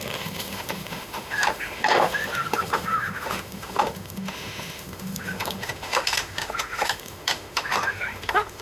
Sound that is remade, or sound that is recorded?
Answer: remade